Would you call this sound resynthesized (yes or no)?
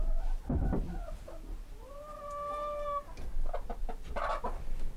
no